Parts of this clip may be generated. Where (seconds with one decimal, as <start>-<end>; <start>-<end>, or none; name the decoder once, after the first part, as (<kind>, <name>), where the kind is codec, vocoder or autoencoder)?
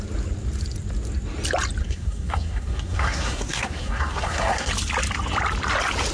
1.8-4.7 (codec, SNAC)